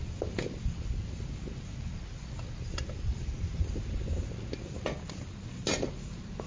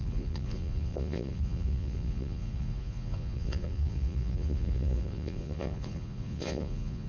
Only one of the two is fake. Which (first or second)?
second